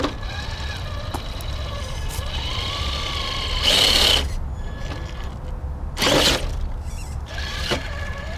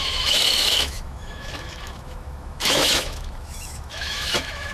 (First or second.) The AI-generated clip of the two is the second